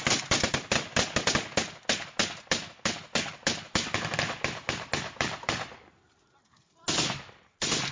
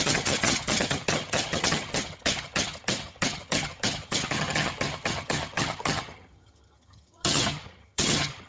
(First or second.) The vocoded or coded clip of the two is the second